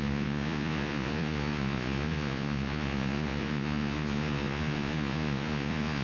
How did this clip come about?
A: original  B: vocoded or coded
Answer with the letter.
B